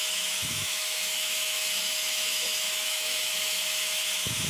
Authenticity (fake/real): fake